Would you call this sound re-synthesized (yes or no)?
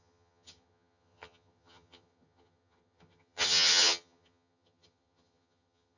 yes